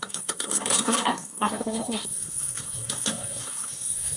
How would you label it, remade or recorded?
remade